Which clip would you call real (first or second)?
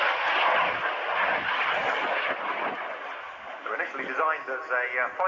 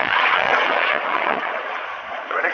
first